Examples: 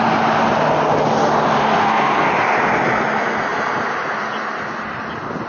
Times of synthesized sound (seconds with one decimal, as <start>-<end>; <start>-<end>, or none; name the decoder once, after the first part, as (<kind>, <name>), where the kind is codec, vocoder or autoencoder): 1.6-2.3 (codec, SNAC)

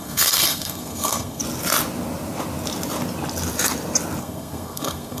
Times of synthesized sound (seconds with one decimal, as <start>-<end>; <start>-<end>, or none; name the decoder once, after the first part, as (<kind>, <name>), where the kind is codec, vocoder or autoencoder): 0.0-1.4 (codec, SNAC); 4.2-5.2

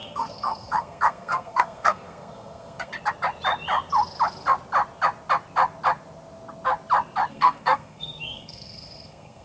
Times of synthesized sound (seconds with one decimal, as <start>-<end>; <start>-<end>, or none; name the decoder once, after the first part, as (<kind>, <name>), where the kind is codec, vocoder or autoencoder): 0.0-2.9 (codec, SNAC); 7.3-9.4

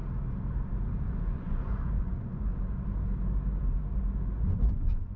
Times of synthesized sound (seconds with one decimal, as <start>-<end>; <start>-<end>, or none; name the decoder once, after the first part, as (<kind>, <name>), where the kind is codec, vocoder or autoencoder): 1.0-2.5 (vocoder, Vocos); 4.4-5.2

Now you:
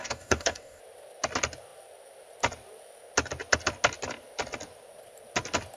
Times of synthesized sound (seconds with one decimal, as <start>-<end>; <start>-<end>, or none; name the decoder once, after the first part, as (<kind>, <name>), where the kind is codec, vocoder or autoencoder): 0.0-0.8 (codec, DAC)

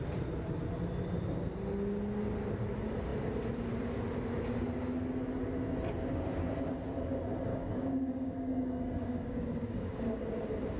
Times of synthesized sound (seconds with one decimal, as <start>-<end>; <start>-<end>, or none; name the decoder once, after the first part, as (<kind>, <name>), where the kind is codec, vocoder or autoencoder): 7.5-10.0 (codec, DAC)

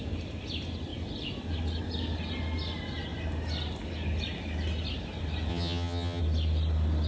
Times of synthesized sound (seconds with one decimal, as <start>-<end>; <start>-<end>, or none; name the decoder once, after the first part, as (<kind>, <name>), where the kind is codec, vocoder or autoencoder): 5.5-6.2 (vocoder, HiFi-GAN)